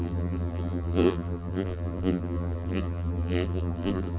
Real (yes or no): no